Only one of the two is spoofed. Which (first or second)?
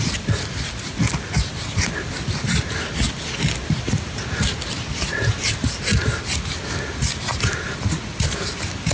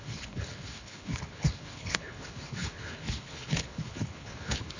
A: second